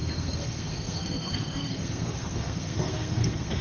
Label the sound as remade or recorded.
remade